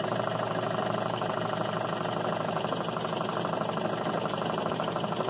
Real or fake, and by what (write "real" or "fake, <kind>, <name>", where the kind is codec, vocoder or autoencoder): real